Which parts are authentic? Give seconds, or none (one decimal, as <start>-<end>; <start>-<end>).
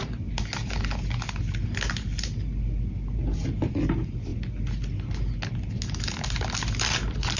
0.0-7.4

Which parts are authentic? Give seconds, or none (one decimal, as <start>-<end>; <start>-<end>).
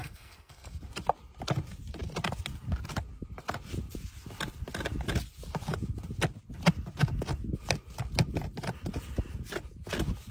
0.8-10.3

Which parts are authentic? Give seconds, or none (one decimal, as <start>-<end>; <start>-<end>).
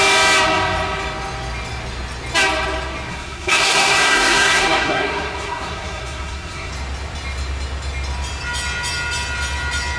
0.0-3.1; 6.7-10.0